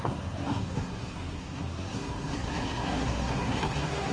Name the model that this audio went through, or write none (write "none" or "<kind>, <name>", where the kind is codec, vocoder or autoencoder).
codec, SNAC